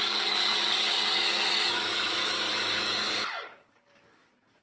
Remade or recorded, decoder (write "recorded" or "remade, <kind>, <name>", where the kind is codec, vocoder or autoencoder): remade, codec, DAC